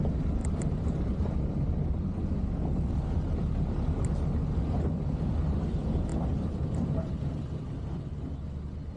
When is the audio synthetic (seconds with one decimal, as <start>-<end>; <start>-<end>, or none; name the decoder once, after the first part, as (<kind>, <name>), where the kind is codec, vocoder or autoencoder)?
none